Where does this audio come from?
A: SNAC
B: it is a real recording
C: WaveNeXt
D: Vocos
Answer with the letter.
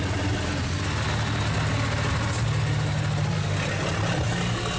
B